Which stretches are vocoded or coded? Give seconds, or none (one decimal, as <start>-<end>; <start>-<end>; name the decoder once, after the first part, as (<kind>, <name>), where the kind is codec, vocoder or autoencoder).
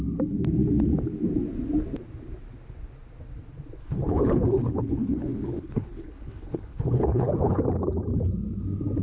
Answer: 3.8-7.6 (codec, HILCodec)